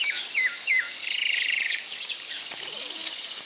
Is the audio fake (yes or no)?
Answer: yes